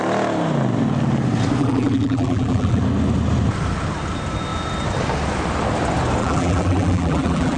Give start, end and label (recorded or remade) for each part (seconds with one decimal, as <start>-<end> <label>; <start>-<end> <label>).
0.0-1.6 recorded; 1.6-2.8 remade; 2.8-6.2 recorded; 6.2-7.6 remade